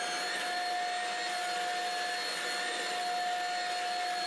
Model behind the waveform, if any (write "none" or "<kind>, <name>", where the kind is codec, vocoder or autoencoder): none